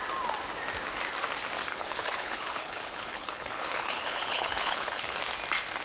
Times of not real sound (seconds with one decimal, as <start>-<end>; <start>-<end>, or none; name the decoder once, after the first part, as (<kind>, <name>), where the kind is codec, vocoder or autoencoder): 1.7-5.2 (codec, HILCodec)